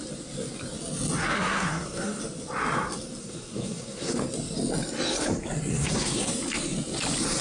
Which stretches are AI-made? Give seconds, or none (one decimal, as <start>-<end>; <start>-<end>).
1.2-2.2; 3.2-4.2; 5.7-6.3